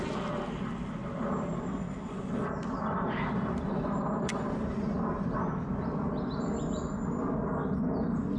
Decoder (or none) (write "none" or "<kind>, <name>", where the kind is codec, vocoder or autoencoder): none